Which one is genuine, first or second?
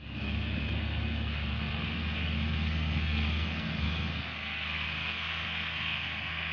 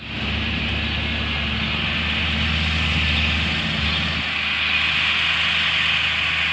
second